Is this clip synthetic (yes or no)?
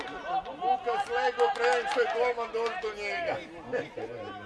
no